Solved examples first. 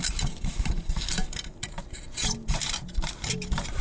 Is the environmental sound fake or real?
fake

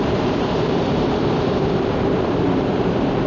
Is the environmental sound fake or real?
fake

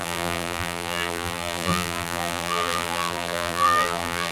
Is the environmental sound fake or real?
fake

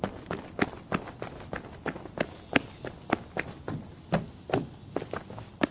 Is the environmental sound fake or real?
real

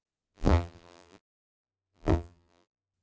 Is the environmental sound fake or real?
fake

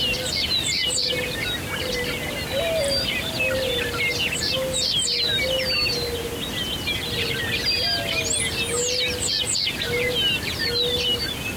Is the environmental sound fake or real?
real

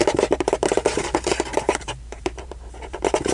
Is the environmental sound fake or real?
fake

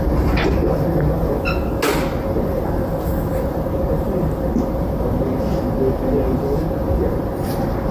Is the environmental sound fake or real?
real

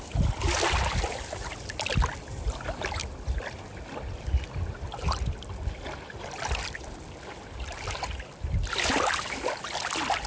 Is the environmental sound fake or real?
real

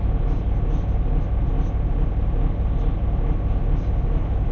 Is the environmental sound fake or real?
real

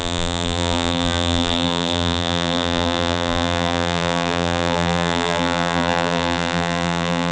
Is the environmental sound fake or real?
fake